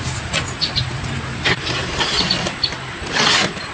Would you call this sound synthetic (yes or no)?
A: no